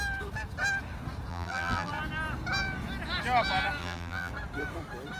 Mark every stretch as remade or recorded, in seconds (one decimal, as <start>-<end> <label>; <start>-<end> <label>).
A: 0.0-1.3 recorded; 1.3-1.9 remade; 1.9-3.8 recorded; 3.8-4.3 remade; 4.3-5.2 recorded